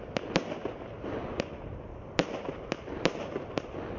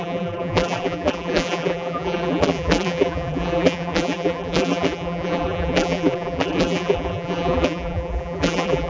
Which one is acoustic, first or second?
first